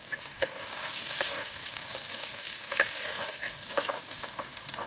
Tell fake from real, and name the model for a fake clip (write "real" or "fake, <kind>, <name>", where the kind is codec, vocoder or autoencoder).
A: fake, codec, DAC